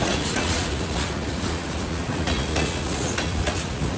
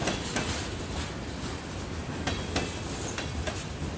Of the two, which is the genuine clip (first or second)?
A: second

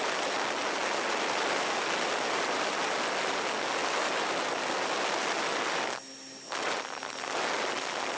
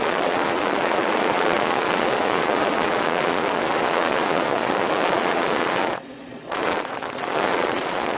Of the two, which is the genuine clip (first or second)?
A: first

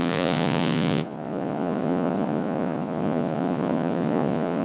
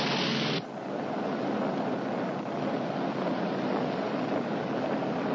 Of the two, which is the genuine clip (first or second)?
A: second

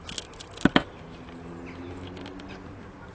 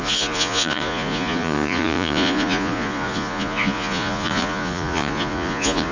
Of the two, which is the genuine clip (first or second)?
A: first